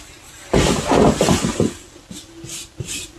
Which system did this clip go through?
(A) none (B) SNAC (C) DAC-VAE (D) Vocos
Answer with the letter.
A